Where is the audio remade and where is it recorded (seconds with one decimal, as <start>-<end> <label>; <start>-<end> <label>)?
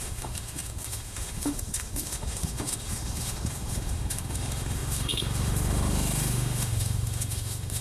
0.0-7.8 remade